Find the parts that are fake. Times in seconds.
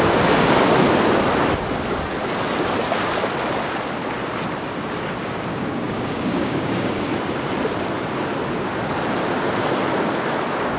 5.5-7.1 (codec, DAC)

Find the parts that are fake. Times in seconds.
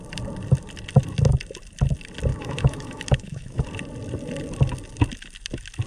2.3-3.6 (autoencoder, DAC-VAE)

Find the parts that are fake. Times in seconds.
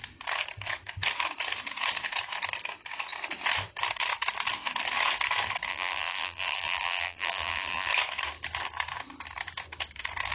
5.7-7.9 (vocoder, BigVGAN v2)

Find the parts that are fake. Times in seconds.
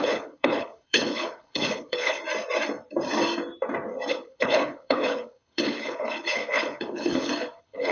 0.0-2.2 (codec, HILCodec); 4.1-7.9